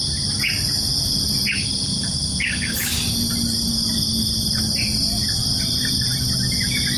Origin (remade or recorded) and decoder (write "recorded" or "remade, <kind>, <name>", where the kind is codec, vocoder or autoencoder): recorded